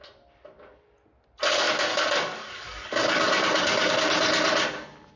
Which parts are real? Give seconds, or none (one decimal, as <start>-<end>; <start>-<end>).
0.0-1.9; 3.9-5.2